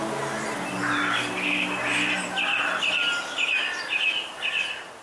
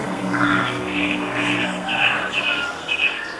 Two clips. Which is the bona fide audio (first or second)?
first